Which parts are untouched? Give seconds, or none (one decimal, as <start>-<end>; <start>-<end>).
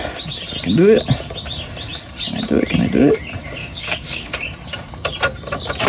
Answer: 0.0-3.6; 4.3-5.9